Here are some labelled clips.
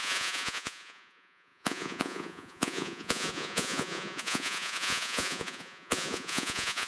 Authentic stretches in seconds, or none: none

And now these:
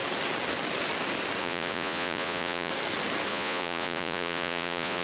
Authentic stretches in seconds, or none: 0.0-1.4; 2.7-3.3

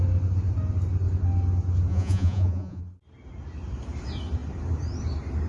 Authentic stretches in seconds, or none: 0.0-1.9; 2.8-5.5

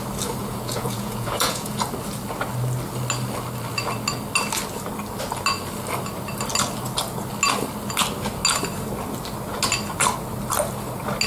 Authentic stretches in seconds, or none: 0.0-0.4; 1.8-11.3